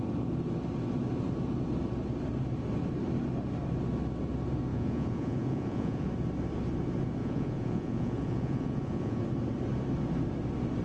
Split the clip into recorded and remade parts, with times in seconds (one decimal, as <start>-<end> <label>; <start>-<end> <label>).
0.0-4.7 recorded; 4.7-6.1 remade; 6.1-7.2 recorded; 7.2-9.2 remade; 9.2-10.8 recorded